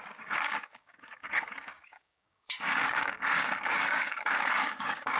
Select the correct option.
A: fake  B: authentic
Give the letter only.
A